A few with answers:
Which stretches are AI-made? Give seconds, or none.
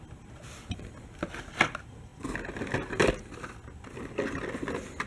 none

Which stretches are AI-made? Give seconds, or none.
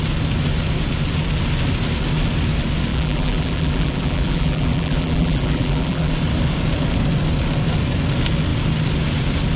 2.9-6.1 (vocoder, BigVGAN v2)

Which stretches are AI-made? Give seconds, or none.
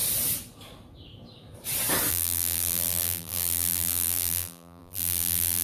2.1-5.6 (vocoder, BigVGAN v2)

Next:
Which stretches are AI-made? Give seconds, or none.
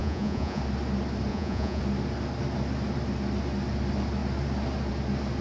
0.0-0.6 (vocoder, Vocos); 1.3-1.8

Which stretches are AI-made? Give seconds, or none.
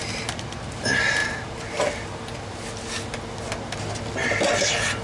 none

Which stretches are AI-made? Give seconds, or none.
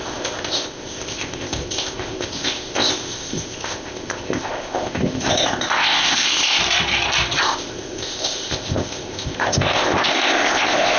0.0-6.6 (codec, ZipCodec); 7.4-11.0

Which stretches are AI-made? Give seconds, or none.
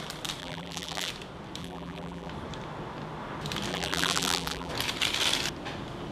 0.4-1.1 (vocoder, BigVGAN v2); 1.6-2.3; 3.7-4.7